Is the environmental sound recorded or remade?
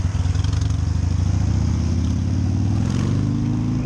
recorded